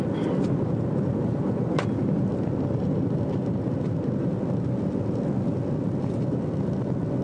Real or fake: fake